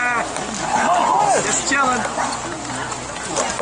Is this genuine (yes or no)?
yes